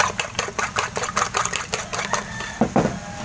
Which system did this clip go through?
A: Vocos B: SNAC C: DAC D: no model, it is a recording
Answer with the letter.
D